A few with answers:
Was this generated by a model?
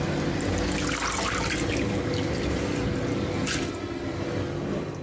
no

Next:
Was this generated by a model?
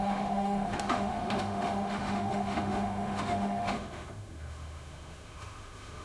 yes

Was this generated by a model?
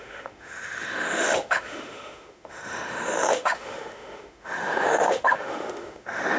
yes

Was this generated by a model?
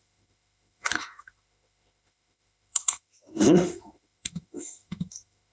yes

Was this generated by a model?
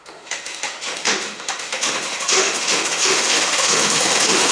yes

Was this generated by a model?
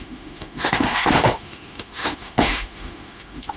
yes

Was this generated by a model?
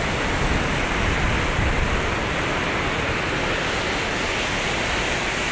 no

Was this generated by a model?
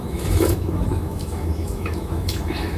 yes